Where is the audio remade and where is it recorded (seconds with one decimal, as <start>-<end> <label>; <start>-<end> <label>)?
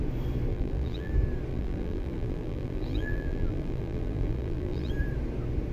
0.0-0.5 recorded; 0.5-1.1 remade; 1.1-1.5 recorded; 1.5-4.9 remade; 4.9-5.7 recorded